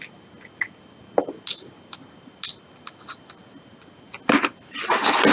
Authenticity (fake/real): real